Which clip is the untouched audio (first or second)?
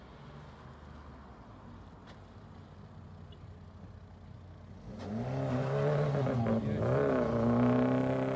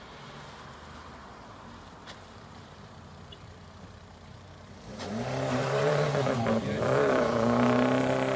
first